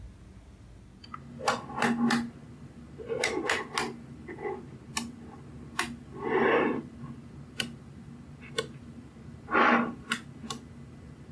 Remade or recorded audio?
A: recorded